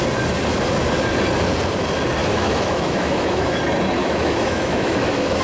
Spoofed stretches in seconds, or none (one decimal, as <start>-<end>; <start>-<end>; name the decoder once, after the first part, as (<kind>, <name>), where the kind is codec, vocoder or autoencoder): 2.2-3.6 (autoencoder, DAC-VAE); 4.0-5.4